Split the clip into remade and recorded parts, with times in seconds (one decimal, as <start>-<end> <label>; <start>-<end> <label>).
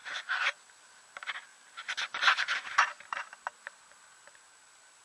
0.0-5.0 recorded